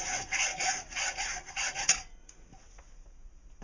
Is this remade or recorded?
remade